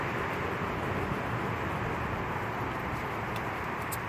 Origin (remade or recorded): recorded